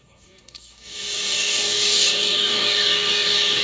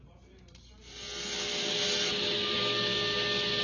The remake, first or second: first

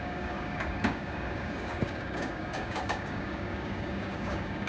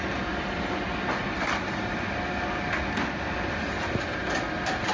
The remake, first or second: first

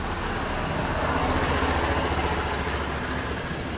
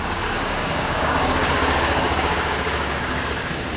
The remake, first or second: second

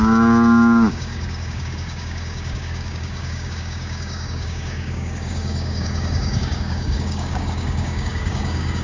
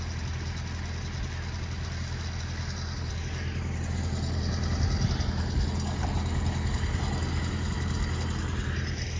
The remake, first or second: first